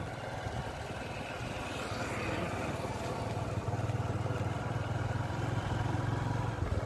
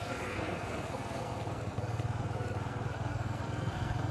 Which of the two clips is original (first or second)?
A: first